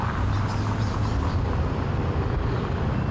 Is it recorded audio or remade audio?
recorded